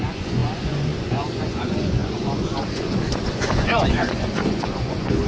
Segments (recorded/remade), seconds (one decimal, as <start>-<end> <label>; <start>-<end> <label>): 0.0-5.3 remade